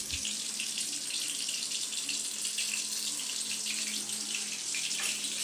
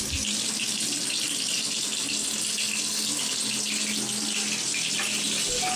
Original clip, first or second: second